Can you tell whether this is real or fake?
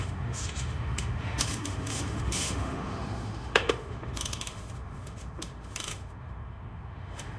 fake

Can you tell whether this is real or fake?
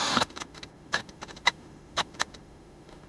fake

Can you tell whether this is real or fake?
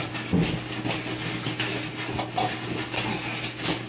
real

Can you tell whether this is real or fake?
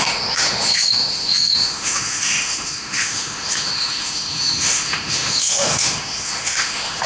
fake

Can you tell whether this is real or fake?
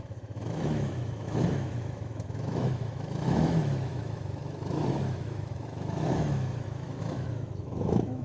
fake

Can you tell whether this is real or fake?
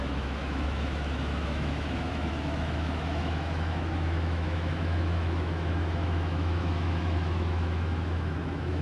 fake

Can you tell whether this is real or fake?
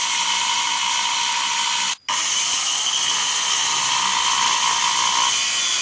real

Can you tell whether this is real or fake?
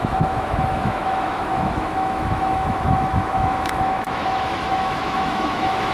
fake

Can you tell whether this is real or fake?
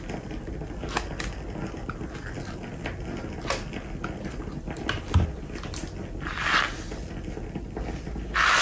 real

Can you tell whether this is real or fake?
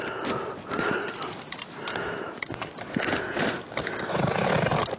real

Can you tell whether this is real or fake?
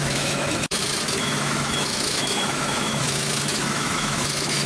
fake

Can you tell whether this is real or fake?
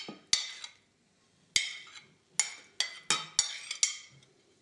real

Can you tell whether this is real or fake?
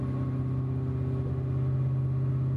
real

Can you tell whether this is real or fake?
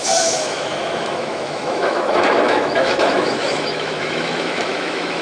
fake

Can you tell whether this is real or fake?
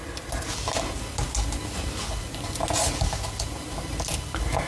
real